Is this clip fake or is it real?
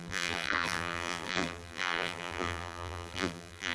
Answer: fake